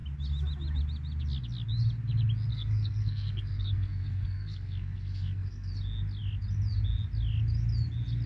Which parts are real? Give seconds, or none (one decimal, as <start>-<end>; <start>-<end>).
0.0-2.5; 5.7-8.3

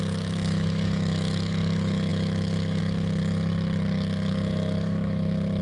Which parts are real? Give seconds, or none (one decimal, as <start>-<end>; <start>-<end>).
3.3-4.3

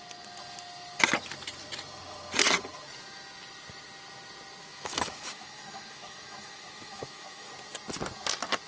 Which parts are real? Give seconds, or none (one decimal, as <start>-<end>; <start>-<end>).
0.0-4.6; 7.5-8.7